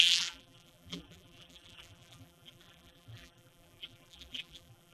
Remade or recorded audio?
remade